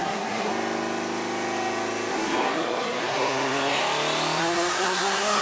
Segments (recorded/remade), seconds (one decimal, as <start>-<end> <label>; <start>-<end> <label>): 0.0-0.5 remade; 0.5-2.1 recorded; 2.1-3.8 remade; 3.8-4.4 recorded; 4.4-5.4 remade